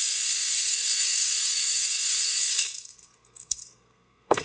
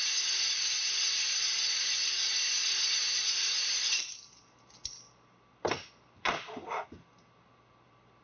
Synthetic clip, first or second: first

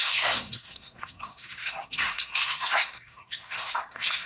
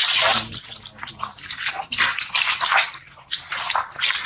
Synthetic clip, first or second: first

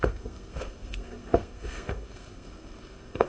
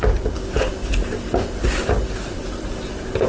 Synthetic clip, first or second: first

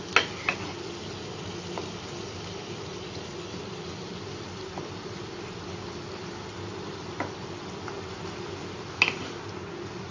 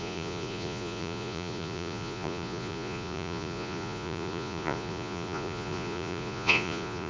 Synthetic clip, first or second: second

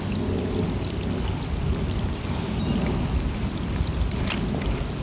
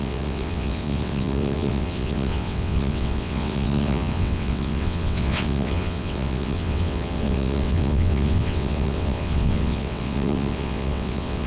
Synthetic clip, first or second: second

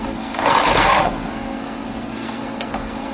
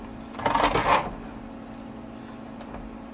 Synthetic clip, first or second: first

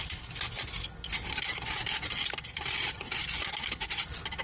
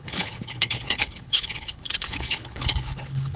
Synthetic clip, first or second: second